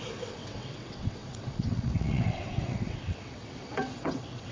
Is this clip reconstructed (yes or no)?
yes